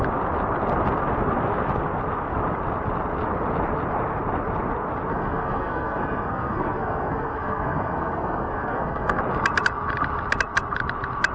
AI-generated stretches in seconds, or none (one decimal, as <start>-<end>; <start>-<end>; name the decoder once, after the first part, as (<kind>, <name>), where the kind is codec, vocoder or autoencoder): 5.1-9.2 (codec, SNAC)